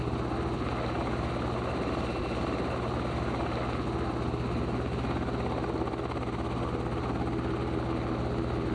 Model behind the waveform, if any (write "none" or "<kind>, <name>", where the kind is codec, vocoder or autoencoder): none